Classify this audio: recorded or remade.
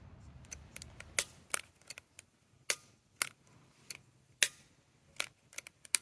recorded